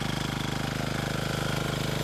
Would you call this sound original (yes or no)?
yes